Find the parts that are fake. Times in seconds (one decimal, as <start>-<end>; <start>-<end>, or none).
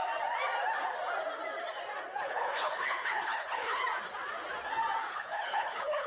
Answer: 2.2-3.8; 5.1-6.1